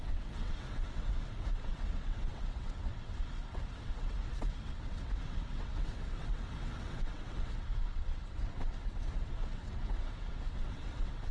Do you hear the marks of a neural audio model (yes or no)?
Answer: yes